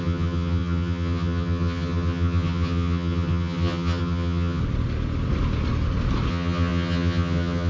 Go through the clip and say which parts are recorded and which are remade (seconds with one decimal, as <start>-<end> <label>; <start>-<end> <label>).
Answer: 0.0-4.6 remade; 4.6-6.3 recorded; 6.3-7.7 remade